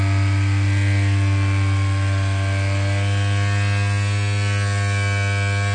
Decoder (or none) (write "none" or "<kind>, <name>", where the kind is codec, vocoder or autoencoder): none